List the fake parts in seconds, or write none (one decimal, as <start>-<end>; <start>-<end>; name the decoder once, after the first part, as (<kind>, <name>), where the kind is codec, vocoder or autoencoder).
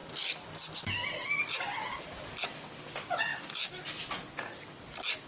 none